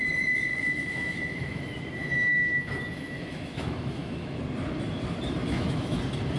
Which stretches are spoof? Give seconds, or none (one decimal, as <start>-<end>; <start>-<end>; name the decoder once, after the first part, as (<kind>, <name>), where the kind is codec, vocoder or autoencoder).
0.5-1.6 (autoencoder, DAC-VAE); 2.0-4.4; 5.4-6.0